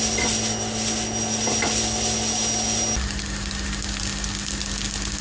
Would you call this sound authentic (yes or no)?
yes